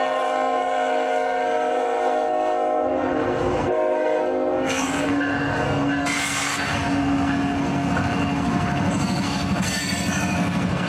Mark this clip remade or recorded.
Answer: remade